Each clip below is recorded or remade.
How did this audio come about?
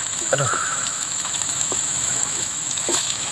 remade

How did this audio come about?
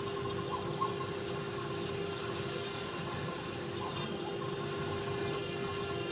recorded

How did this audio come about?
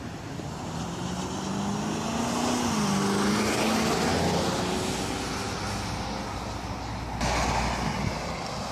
recorded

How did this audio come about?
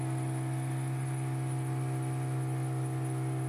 recorded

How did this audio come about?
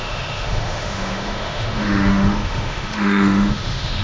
remade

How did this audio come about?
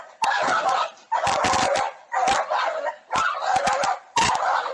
recorded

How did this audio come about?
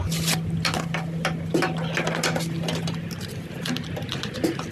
recorded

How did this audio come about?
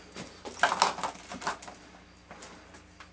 recorded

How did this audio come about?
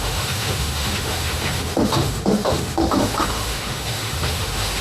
remade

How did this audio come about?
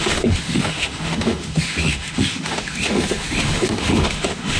remade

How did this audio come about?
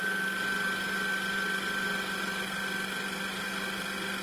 recorded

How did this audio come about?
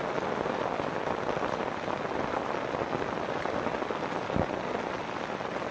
recorded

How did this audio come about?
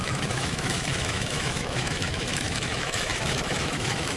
remade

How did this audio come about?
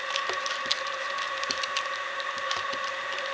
recorded